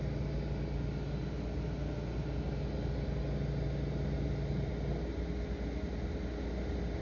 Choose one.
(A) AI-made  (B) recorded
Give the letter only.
B